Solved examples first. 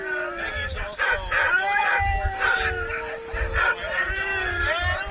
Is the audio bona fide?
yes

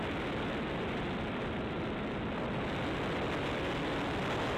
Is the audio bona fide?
yes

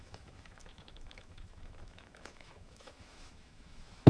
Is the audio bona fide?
no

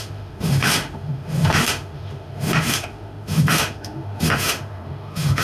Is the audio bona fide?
no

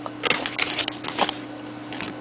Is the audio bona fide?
yes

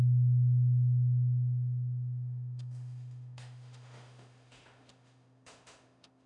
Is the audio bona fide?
no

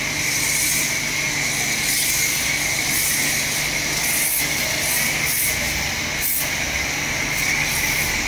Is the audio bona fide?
yes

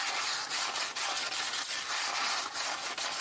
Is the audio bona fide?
yes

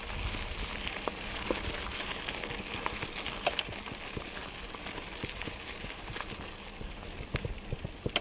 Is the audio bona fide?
yes